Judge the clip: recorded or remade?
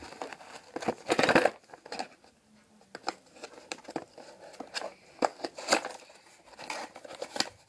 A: recorded